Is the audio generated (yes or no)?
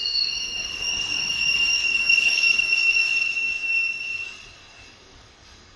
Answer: yes